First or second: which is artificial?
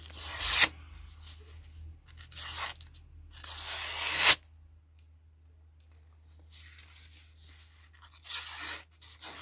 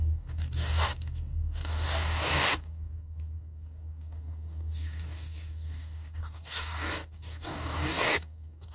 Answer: second